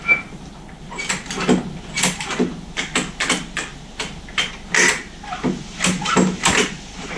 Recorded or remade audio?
recorded